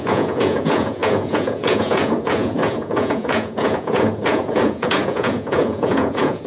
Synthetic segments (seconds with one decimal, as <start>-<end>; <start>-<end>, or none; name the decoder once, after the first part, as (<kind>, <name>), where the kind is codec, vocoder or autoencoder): 0.0-6.5 (vocoder, Vocos)